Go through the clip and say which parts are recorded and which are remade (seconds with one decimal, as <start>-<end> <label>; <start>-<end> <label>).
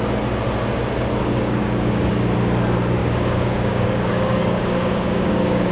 0.0-1.2 recorded; 1.2-2.1 remade; 2.1-3.0 recorded; 3.0-5.7 remade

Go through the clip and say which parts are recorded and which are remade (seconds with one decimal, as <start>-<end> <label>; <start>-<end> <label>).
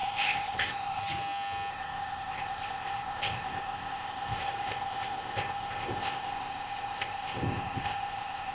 0.0-1.0 remade; 1.0-1.7 recorded; 1.7-8.5 remade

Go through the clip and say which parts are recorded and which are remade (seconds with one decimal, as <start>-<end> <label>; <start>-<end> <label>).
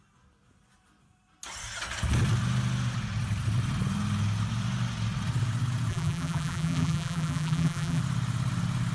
0.0-5.9 recorded; 5.9-8.0 remade; 8.0-8.9 recorded